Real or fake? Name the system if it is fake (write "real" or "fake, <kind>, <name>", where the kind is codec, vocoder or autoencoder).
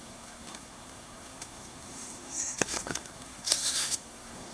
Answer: fake, codec, SNAC